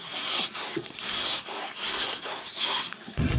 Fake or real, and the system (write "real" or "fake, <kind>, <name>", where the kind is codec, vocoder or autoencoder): fake, codec, SNAC